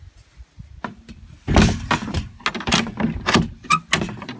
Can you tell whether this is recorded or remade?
recorded